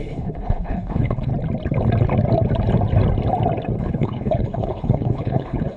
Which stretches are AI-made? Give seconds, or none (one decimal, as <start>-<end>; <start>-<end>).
0.0-1.3; 3.8-5.8